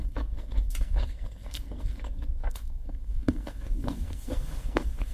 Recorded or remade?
remade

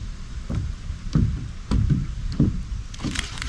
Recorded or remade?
remade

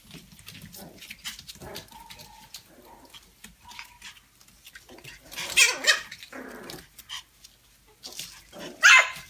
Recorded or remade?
recorded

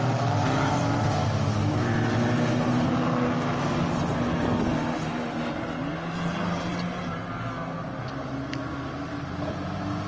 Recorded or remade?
recorded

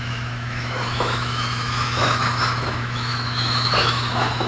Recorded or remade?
remade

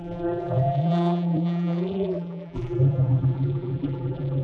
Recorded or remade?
remade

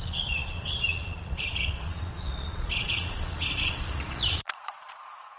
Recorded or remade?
remade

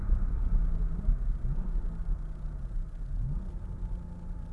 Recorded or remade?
recorded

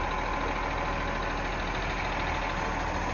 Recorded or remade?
recorded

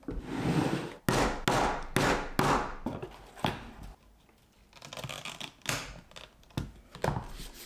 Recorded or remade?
recorded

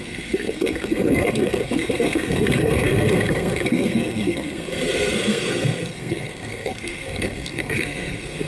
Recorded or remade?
remade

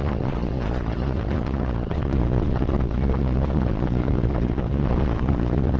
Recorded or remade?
remade